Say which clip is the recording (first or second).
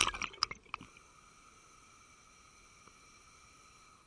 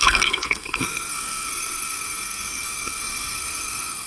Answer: first